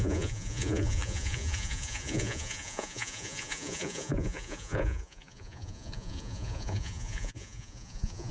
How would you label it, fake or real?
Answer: fake